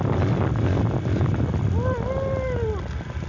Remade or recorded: recorded